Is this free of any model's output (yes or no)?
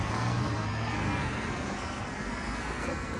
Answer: no